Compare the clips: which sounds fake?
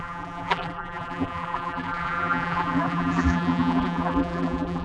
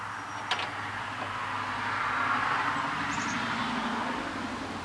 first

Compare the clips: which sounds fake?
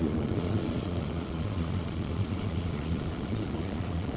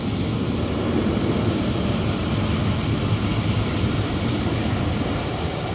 first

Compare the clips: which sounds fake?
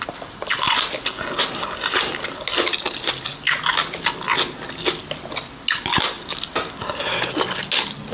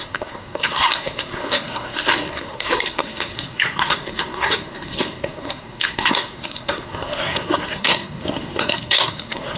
second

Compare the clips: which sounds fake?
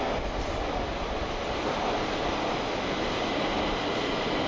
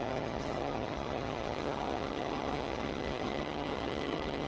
second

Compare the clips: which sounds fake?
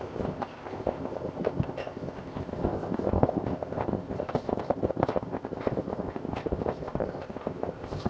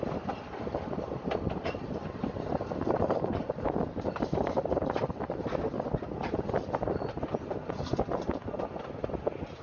first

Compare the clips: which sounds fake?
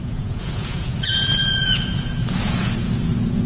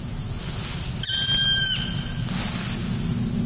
first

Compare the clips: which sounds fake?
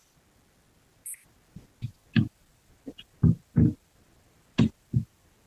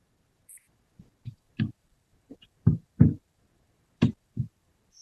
second